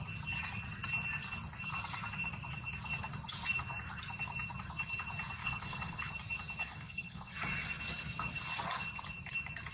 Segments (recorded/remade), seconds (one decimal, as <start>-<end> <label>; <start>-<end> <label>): 0.0-5.4 recorded; 5.4-6.1 remade; 6.1-6.6 recorded; 6.6-7.3 remade; 7.3-9.7 recorded

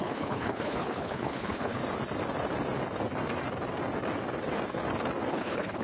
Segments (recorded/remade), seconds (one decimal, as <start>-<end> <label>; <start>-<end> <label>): 0.0-1.8 remade; 1.8-5.3 recorded; 5.3-5.8 remade

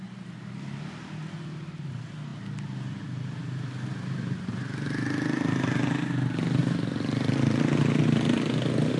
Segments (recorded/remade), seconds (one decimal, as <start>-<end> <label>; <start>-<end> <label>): 0.0-9.0 recorded

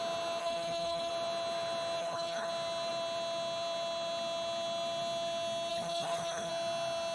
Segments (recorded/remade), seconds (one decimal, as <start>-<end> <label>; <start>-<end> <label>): 0.0-0.4 recorded; 0.4-1.1 remade; 1.1-2.0 recorded; 2.0-2.5 remade; 2.5-5.7 recorded; 5.7-6.5 remade; 6.5-7.1 recorded

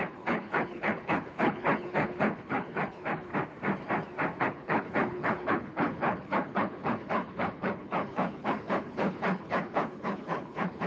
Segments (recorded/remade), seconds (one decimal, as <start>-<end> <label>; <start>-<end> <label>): 0.0-3.3 remade; 3.3-4.4 recorded; 4.4-10.9 remade